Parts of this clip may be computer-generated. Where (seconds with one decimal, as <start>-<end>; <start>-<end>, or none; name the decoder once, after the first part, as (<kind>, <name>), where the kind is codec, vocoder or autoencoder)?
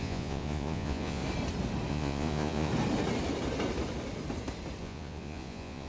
0.0-1.2 (vocoder, Vocos); 1.9-2.7; 4.8-5.9